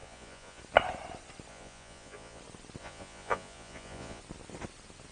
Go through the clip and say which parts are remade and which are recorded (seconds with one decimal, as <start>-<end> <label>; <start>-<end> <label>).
0.0-0.6 remade; 0.6-1.5 recorded; 1.5-2.4 remade; 2.4-2.8 recorded; 2.8-4.2 remade; 4.2-5.1 recorded